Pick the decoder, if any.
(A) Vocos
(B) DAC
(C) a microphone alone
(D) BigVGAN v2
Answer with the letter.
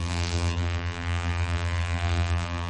D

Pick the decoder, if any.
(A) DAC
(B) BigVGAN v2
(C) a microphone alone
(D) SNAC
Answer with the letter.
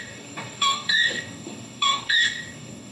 A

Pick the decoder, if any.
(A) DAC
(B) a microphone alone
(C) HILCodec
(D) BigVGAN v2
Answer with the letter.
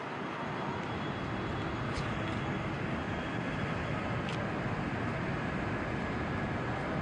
B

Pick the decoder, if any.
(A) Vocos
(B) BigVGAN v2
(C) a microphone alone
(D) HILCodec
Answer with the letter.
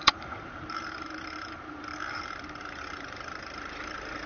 B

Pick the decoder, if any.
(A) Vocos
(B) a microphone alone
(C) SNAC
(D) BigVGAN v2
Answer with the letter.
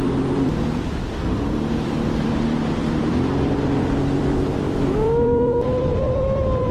D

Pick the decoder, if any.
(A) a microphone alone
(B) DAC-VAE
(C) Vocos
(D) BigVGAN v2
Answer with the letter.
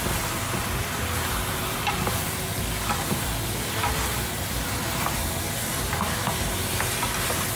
A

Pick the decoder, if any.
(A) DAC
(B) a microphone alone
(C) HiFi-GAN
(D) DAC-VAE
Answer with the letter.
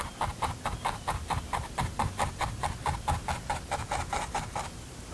B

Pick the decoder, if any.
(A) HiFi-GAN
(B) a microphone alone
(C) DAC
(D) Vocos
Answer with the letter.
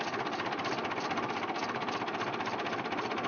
B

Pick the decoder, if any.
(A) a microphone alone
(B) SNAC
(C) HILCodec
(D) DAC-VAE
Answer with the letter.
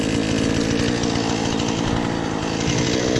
A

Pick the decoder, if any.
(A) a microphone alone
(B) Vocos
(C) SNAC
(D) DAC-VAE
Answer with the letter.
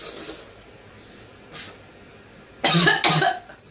A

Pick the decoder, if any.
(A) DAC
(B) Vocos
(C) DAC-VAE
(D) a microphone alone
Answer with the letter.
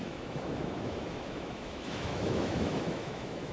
C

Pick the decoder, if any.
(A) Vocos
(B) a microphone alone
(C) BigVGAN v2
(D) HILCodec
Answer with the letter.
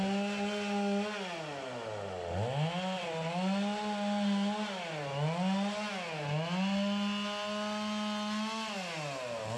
B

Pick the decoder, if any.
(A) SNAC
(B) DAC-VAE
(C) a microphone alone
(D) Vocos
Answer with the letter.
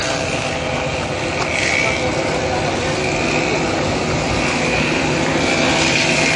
C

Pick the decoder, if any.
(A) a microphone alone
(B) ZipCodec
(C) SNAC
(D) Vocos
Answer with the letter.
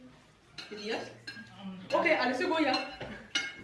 A